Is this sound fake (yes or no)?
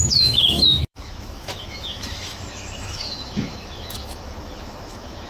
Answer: yes